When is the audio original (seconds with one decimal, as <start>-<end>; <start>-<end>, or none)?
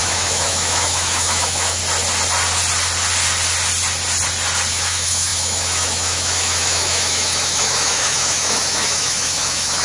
1.8-4.7